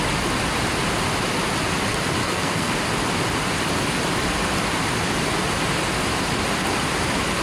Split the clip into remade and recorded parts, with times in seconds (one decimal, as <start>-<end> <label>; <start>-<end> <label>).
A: 0.0-2.2 recorded; 2.2-2.7 remade; 2.7-7.4 recorded